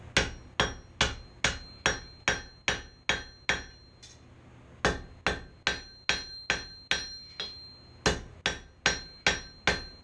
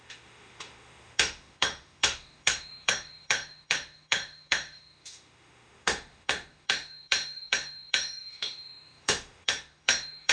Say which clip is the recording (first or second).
first